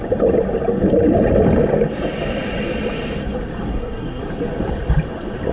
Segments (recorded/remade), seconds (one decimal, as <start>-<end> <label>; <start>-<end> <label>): 0.0-3.7 recorded; 3.7-4.2 remade; 4.2-5.5 recorded